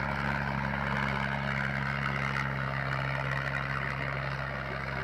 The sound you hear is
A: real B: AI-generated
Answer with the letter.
A